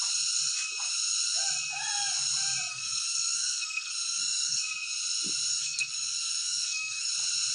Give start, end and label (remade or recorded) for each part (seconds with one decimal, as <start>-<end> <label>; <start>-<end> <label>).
0.0-2.7 recorded; 2.7-4.6 remade; 4.6-5.5 recorded; 5.5-7.1 remade; 7.1-7.5 recorded